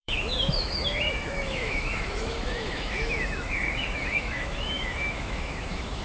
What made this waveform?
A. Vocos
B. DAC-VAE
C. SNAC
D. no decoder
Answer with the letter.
B